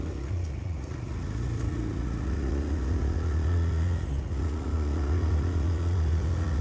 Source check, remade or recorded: remade